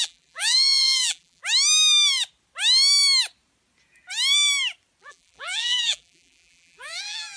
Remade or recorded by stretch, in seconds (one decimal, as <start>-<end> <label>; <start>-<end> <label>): 0.0-1.4 remade; 1.4-5.0 recorded; 5.0-7.4 remade